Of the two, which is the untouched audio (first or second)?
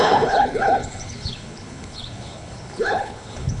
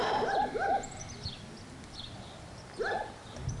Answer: second